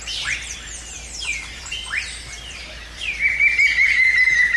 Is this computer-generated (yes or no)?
yes